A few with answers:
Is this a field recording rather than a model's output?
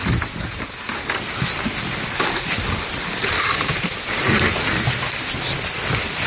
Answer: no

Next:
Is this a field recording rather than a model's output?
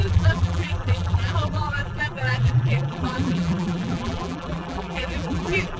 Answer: no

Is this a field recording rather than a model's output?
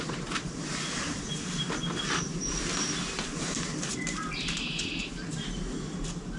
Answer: no